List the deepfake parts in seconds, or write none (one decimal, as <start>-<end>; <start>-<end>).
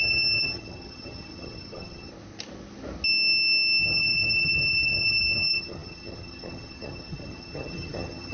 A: 0.0-2.1; 3.8-8.3